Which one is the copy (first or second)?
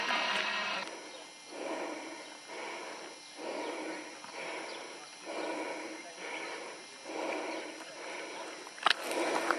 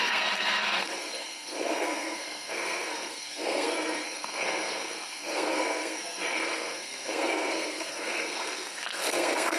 second